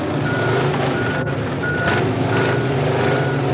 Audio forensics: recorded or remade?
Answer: recorded